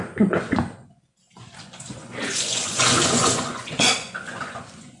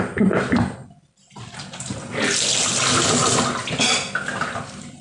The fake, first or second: first